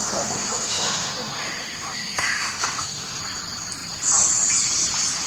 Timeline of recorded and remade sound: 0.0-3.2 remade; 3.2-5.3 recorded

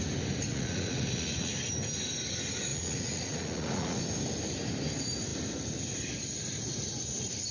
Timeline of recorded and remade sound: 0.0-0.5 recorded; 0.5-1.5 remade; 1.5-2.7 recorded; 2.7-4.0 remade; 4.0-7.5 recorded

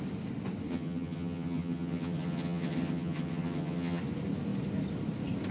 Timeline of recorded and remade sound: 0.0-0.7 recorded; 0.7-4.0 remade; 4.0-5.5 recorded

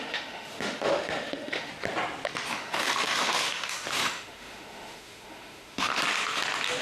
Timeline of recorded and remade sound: 0.0-1.7 remade; 1.7-2.5 recorded; 2.5-5.9 remade; 5.9-6.8 recorded